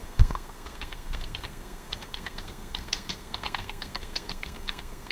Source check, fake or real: fake